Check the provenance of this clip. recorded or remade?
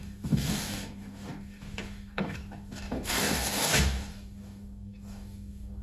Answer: remade